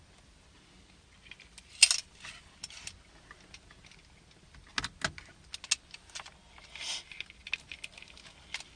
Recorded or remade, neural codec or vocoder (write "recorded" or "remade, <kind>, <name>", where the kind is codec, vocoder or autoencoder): recorded